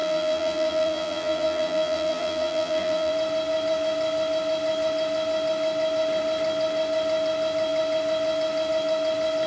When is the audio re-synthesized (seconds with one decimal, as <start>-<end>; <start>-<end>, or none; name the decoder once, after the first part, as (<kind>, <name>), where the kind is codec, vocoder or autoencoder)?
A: 0.0-3.1 (vocoder, BigVGAN v2)